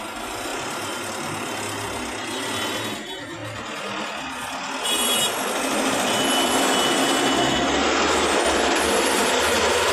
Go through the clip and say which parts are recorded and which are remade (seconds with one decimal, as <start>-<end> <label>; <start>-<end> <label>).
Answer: 0.0-0.5 recorded; 0.5-1.1 remade; 1.1-9.9 recorded